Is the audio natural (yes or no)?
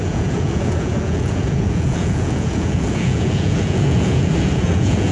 no